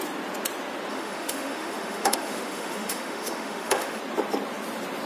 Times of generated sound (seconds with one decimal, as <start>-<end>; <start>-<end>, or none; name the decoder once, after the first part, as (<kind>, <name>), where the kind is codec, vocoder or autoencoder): 0.9-4.0 (autoencoder, DAC-VAE)